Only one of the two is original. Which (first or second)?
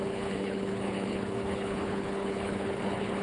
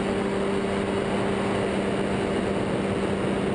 second